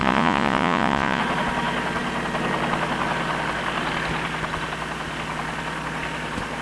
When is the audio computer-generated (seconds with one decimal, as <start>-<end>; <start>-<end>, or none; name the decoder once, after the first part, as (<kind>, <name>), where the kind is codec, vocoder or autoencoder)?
0.0-1.2 (vocoder, Vocos)